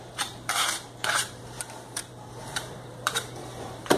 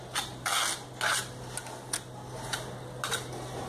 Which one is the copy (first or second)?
first